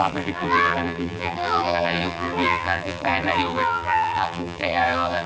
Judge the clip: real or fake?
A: fake